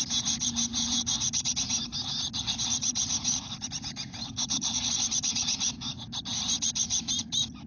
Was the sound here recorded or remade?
remade